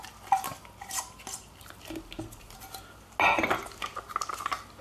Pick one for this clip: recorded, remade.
recorded